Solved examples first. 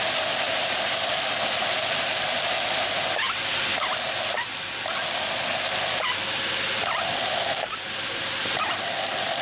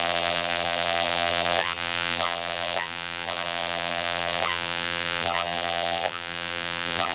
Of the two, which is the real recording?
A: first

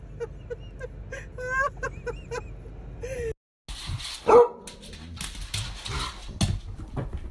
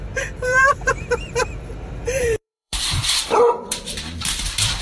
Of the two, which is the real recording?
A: first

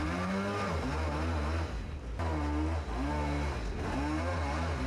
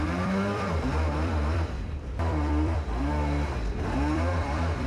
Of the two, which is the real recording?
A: first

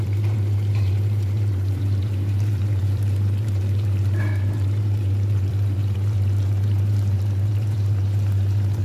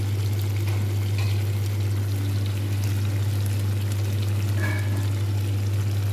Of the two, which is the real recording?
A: second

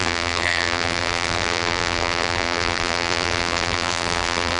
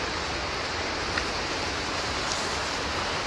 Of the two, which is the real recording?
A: second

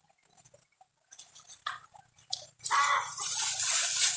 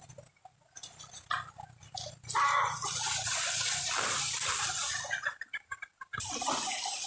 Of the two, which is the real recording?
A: first